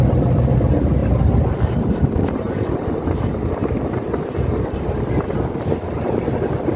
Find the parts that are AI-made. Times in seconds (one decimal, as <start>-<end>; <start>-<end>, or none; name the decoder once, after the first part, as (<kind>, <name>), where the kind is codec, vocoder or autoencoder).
none

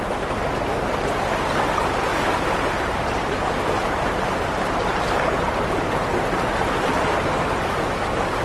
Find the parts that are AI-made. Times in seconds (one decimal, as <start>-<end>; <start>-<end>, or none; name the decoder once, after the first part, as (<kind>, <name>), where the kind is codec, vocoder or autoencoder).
2.1-5.0 (vocoder, BigVGAN v2)